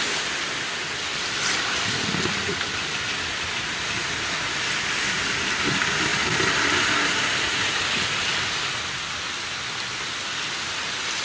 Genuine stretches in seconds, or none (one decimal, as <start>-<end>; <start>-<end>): 0.0-11.2